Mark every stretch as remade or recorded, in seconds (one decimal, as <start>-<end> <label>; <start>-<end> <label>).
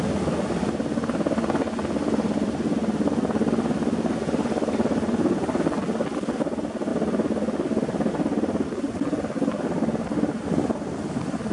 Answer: 0.0-11.5 recorded